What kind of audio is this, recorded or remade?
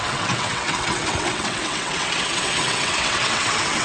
remade